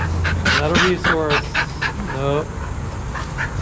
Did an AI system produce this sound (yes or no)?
no